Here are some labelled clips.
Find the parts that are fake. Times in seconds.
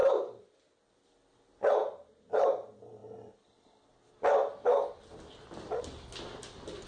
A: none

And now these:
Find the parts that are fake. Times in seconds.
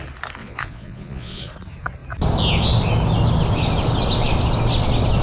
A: 0.4-1.5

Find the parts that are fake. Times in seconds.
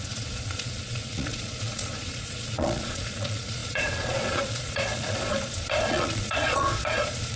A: 0.0-7.4